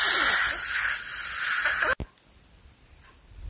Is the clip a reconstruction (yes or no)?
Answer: no